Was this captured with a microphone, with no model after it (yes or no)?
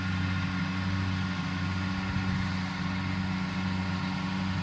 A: yes